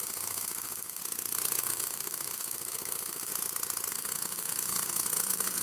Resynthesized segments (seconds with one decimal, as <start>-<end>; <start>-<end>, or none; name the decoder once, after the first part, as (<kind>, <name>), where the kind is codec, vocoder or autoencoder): 0.0-1.0 (codec, SNAC); 1.6-3.3; 3.9-5.6